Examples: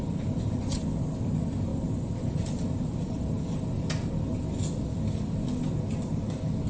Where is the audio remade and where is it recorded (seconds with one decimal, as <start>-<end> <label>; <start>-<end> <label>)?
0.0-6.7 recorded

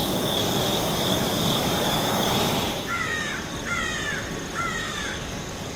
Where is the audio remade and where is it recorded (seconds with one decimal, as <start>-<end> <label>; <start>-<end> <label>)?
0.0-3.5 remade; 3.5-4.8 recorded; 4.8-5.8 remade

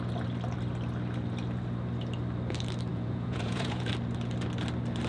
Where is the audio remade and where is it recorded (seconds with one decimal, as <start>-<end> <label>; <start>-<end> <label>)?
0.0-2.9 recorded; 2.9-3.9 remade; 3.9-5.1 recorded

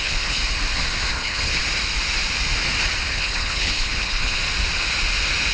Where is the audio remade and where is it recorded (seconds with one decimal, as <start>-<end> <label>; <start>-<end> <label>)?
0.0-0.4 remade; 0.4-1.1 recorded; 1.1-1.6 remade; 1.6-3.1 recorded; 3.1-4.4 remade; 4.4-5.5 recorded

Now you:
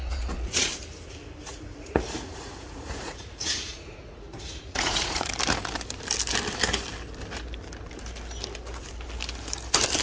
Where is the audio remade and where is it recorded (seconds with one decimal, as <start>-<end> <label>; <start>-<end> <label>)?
0.0-0.7 remade; 0.7-1.5 recorded; 1.5-5.3 remade; 5.3-10.0 recorded

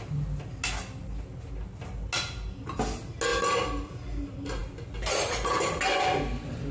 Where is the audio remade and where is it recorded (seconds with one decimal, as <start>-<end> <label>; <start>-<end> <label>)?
0.0-6.7 recorded